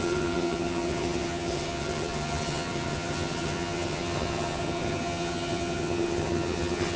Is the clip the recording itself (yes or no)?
no